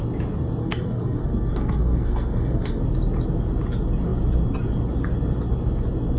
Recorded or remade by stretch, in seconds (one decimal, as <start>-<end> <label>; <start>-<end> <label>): 0.0-0.6 recorded; 0.6-2.8 remade; 2.8-6.2 recorded